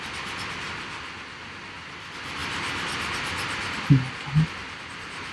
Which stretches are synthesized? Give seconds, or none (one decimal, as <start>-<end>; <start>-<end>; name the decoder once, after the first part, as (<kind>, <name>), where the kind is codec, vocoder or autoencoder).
none